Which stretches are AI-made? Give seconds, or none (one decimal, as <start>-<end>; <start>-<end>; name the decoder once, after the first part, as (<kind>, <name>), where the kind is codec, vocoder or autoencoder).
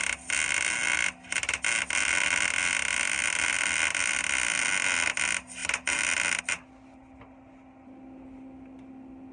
none